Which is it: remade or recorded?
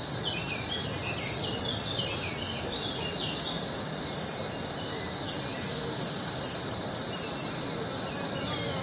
recorded